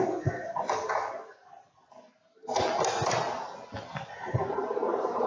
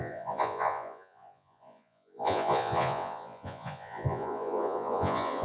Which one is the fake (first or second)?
second